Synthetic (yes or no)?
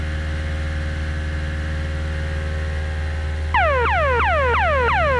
no